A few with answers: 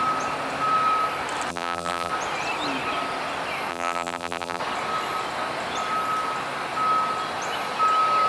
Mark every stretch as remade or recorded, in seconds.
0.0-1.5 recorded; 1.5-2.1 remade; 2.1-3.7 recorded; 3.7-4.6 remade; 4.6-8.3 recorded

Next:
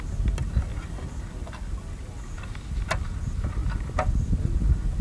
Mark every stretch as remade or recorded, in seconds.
0.0-5.0 recorded

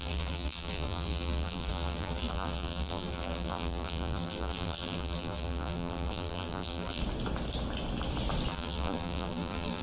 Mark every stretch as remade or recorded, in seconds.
0.0-7.0 remade; 7.0-8.5 recorded; 8.5-9.8 remade

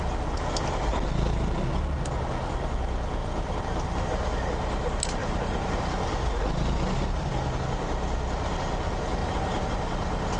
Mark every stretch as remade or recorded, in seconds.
0.0-3.2 recorded; 3.2-4.1 remade; 4.1-5.2 recorded; 5.2-5.7 remade; 5.7-9.2 recorded; 9.2-9.7 remade; 9.7-10.4 recorded